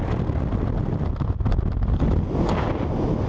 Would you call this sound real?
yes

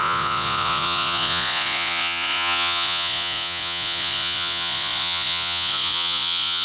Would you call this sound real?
no